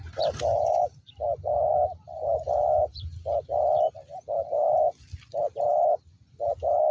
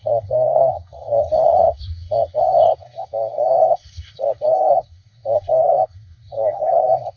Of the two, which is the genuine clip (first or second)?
first